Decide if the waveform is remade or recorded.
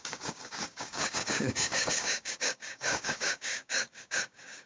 remade